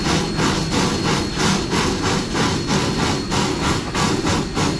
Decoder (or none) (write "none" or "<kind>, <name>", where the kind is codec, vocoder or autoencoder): none